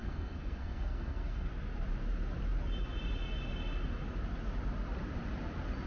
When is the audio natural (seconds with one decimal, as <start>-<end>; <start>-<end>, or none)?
1.5-5.9